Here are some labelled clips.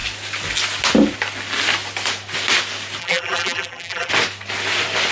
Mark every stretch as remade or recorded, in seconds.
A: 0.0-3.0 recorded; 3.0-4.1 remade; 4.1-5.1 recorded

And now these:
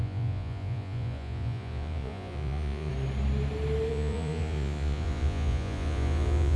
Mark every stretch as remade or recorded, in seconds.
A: 0.0-2.9 remade; 2.9-3.9 recorded; 3.9-6.6 remade

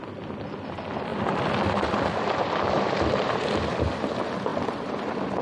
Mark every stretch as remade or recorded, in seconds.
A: 0.0-1.1 recorded; 1.1-3.7 remade; 3.7-4.5 recorded; 4.5-5.4 remade

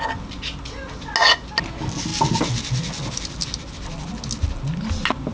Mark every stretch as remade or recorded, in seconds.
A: 0.0-5.3 recorded

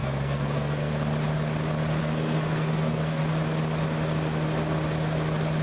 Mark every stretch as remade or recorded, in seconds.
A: 0.0-0.9 remade; 0.9-2.0 recorded; 2.0-3.2 remade; 3.2-5.6 recorded